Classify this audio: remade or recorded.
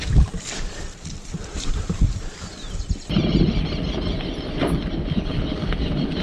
remade